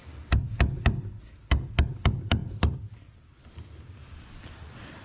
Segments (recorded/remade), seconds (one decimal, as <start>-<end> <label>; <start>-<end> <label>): 0.0-1.8 recorded; 1.8-5.0 remade